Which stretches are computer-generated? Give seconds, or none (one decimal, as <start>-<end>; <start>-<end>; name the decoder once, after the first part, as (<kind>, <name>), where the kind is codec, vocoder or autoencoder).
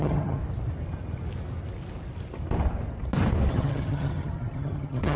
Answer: 0.0-0.4 (vocoder, HiFi-GAN); 3.5-5.2